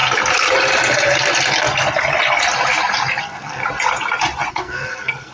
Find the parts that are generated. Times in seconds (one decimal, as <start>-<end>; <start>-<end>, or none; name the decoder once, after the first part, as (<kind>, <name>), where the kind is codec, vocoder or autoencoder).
3.2-3.6 (codec, SNAC); 4.5-5.3